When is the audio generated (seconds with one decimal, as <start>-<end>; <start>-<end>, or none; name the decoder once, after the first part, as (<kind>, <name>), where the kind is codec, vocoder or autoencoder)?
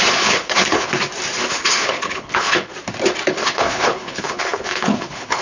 0.0-0.9 (codec, HILCodec); 1.5-2.7; 3.3-5.4